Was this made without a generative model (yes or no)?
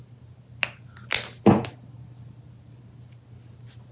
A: yes